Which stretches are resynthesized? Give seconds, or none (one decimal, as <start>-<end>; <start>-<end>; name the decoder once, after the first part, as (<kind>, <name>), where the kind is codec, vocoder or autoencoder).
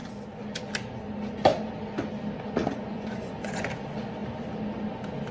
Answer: 2.6-3.6 (vocoder, Vocos)